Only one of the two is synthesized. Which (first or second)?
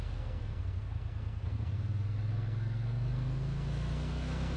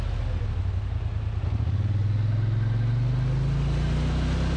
first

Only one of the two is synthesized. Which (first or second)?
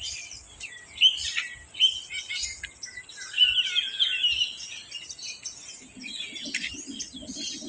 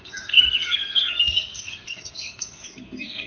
second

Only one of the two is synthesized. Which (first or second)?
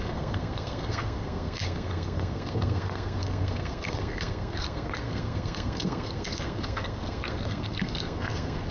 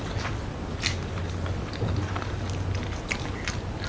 first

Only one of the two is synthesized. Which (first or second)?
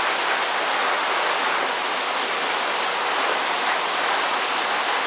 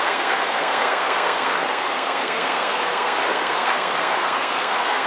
second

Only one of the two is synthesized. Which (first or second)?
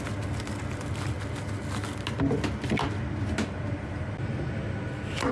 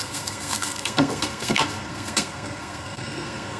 second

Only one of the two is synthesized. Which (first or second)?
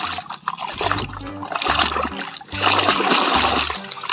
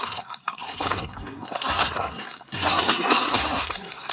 second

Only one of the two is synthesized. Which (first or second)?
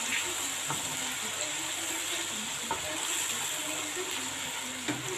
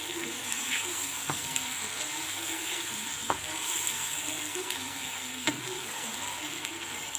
second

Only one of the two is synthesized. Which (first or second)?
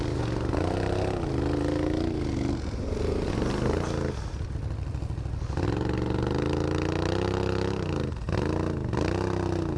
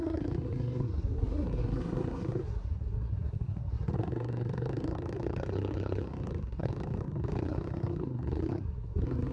second